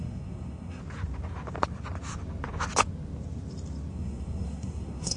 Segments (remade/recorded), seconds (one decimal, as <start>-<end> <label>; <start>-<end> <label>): 0.0-0.8 remade; 0.8-3.9 recorded; 3.9-5.2 remade